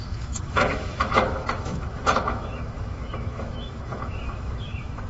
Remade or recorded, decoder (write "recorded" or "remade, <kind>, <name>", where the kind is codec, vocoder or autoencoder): remade, autoencoder, DAC-VAE